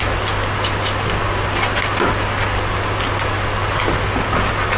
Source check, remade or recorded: recorded